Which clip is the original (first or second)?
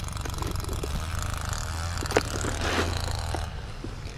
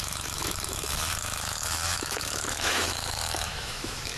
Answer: first